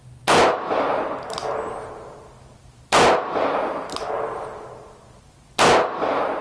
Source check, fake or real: real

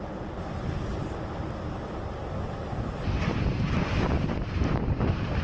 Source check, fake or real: real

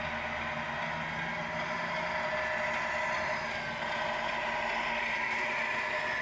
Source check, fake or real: real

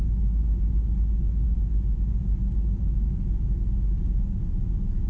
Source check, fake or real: real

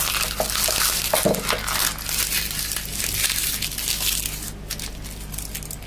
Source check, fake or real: real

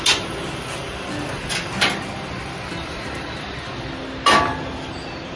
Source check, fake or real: real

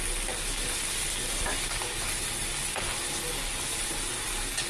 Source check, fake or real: real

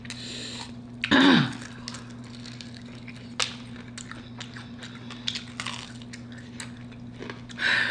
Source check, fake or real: real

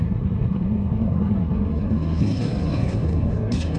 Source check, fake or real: fake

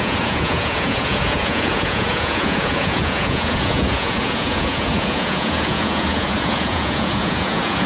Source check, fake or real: fake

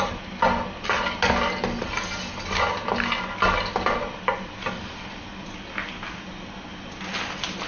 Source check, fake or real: real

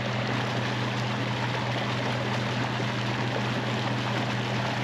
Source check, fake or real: real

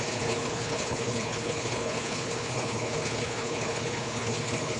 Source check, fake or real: fake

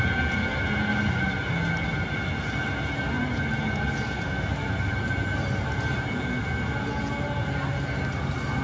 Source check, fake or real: real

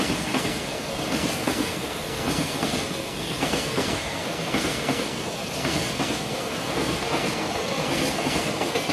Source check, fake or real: fake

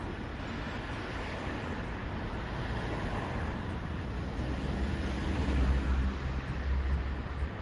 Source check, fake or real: real